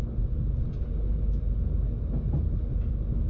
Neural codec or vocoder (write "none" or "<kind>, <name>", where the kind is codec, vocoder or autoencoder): none